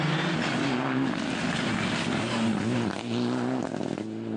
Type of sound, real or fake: real